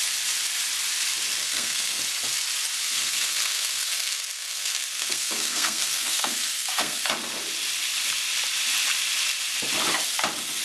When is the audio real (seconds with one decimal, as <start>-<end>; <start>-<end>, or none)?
0.0-1.4; 2.0-2.8; 7.0-10.6